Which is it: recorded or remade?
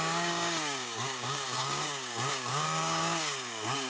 remade